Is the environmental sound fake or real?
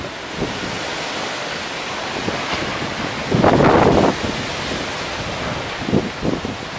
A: real